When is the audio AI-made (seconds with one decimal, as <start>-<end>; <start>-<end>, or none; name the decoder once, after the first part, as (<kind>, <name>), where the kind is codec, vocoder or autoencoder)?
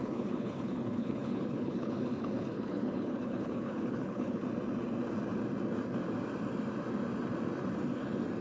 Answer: 0.0-4.4 (codec, HILCodec)